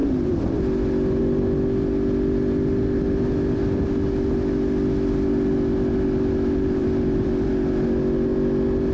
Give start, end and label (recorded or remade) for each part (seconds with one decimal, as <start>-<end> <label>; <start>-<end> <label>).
0.0-1.2 remade; 1.2-6.8 recorded; 6.8-7.5 remade; 7.5-8.9 recorded

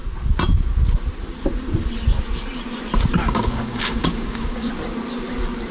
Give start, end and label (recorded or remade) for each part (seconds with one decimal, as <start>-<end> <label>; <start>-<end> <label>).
0.0-3.2 recorded; 3.2-4.7 remade; 4.7-5.7 recorded

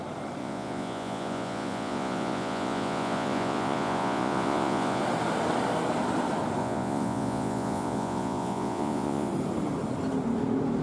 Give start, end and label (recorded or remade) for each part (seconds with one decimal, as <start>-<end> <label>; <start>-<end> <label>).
0.0-0.4 recorded; 0.4-5.0 remade; 5.0-6.6 recorded; 6.6-9.3 remade; 9.3-10.8 recorded